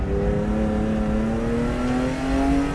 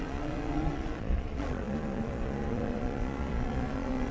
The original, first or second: first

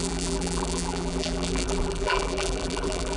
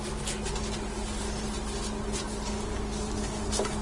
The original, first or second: second